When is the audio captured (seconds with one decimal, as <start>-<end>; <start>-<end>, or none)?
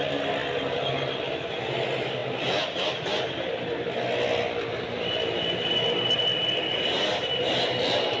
0.0-8.2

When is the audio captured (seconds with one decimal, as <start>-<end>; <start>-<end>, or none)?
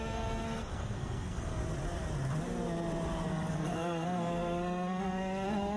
1.6-3.3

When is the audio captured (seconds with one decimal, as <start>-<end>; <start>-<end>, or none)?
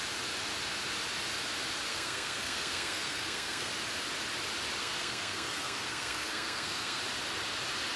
0.0-1.9; 3.7-4.8; 7.0-8.0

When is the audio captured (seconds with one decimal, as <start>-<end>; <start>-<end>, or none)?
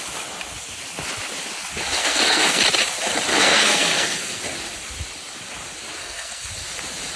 0.0-2.0; 2.6-3.3; 4.4-6.0; 6.5-7.2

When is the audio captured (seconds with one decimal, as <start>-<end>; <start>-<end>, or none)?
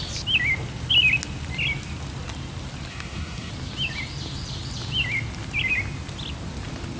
0.0-2.9; 3.5-7.0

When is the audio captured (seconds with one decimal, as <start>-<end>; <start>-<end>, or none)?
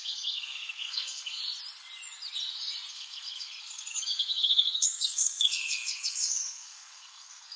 1.4-2.9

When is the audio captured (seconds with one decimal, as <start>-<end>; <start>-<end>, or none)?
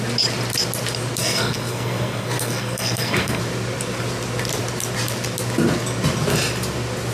0.0-1.2; 3.4-7.1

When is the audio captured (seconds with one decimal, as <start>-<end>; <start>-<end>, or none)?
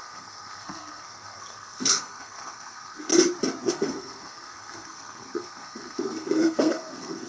3.1-3.6